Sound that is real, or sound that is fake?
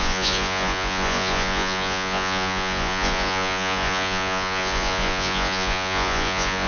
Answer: fake